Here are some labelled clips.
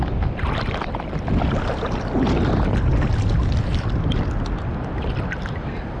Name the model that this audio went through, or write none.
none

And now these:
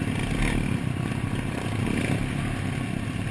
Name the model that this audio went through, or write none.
none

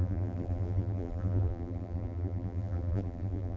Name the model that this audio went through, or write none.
vocoder, BigVGAN v2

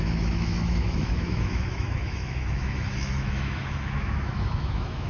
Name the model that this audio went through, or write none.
autoencoder, DAC-VAE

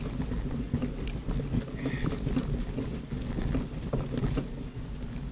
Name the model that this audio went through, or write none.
none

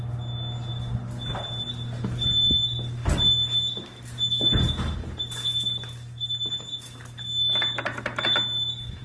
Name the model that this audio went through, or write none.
none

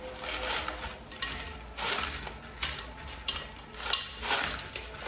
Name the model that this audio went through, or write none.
none